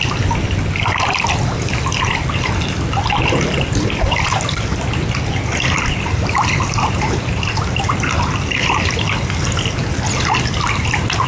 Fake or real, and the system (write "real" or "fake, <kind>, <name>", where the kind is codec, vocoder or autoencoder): real